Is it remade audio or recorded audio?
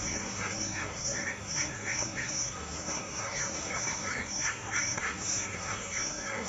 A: remade